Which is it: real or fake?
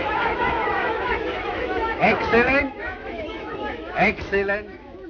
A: fake